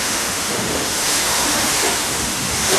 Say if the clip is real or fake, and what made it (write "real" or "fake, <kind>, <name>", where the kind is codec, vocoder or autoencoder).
fake, autoencoder, DAC-VAE